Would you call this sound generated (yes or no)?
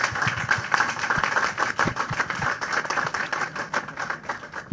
no